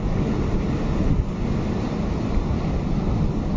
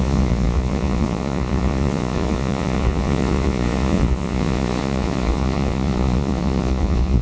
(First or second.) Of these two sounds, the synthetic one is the second